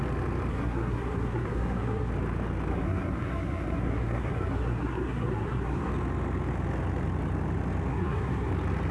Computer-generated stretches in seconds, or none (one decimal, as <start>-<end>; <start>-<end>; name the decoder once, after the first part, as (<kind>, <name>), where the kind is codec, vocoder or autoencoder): 0.5-2.1 (codec, SNAC); 2.7-5.9; 7.9-8.5